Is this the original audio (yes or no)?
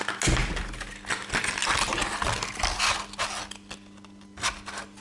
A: yes